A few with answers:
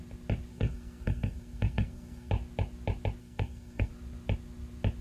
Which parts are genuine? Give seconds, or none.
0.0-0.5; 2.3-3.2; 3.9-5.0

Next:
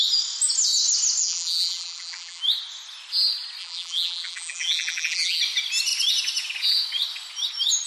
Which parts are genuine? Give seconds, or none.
0.0-1.2; 2.4-3.6; 5.4-7.9

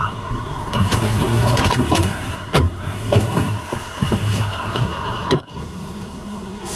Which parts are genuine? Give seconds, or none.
none

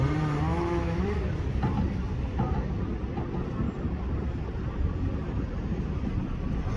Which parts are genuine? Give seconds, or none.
0.0-0.5; 1.0-6.8

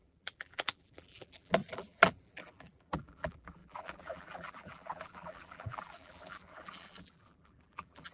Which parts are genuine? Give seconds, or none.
none